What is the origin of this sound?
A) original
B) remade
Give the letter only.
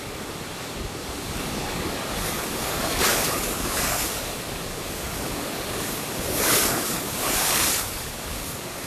B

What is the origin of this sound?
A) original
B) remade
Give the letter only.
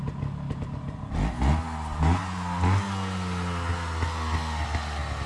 A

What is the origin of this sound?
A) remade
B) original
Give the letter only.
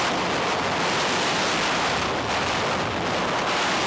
B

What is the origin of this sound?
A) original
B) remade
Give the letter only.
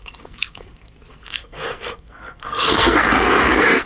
B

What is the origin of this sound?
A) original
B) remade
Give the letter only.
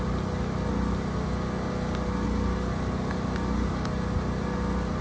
A